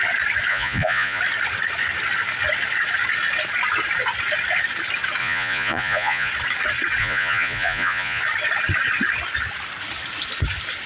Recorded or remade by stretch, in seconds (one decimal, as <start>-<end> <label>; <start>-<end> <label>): 0.0-0.5 recorded; 0.5-1.2 remade; 1.2-5.2 recorded; 5.2-6.3 remade; 6.3-7.0 recorded; 7.0-8.2 remade; 8.2-10.9 recorded